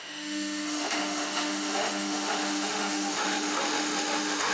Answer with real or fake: fake